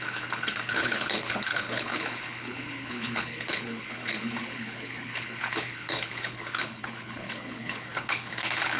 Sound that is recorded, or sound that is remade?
remade